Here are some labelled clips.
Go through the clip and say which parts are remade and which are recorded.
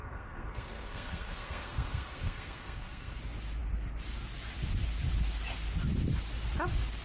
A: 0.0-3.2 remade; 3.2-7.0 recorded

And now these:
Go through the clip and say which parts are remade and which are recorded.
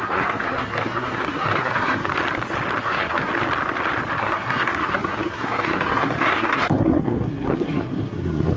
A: 0.0-2.1 remade; 2.1-2.8 recorded; 2.8-3.3 remade; 3.3-4.2 recorded; 4.2-8.6 remade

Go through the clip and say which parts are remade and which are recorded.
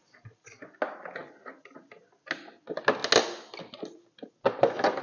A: 0.0-5.0 recorded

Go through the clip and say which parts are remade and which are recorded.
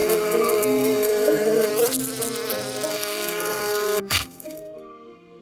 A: 0.0-1.7 remade; 1.7-2.9 recorded; 2.9-5.4 remade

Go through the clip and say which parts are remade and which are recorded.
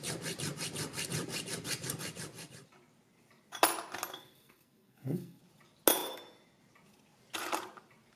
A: 0.0-4.1 recorded; 4.1-5.4 remade; 5.4-8.2 recorded